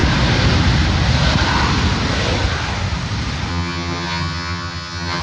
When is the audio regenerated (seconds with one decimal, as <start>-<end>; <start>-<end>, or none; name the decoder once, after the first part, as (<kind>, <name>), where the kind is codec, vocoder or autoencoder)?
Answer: 3.5-5.2 (vocoder, HiFi-GAN)